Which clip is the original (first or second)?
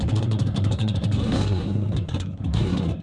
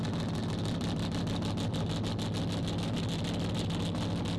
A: second